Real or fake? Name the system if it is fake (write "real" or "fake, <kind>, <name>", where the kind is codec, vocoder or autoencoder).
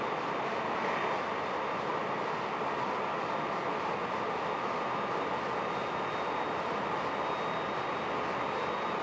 real